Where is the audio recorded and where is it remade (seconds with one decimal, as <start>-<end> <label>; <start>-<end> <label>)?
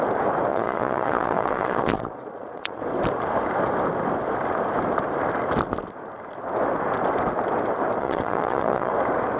0.0-0.5 recorded; 0.5-2.8 remade; 2.8-8.0 recorded; 8.0-8.9 remade; 8.9-9.4 recorded